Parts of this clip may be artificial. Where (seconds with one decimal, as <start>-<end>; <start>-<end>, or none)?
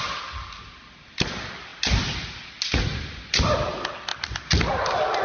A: none